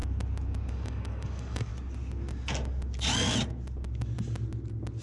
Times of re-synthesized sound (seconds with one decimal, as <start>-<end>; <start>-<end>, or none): 0.7-1.7